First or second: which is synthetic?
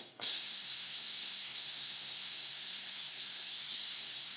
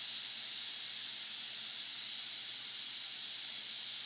first